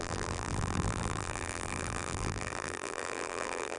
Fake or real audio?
fake